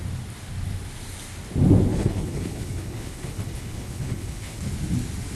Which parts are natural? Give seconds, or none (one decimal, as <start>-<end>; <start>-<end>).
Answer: 0.0-1.9; 4.7-5.4